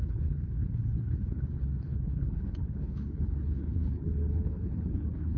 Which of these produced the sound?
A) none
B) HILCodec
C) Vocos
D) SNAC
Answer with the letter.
B